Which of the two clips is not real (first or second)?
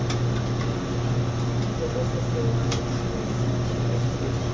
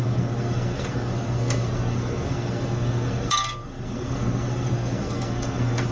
second